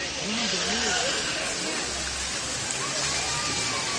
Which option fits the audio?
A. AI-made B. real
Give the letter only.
B